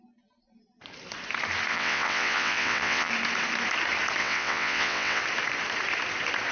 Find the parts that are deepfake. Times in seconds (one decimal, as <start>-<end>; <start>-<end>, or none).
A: 1.7-3.1; 4.2-5.2